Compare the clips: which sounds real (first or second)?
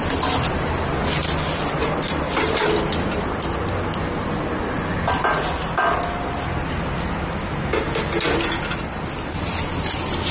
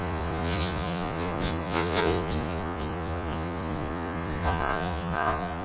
first